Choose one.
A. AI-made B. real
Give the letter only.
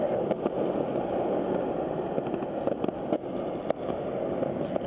B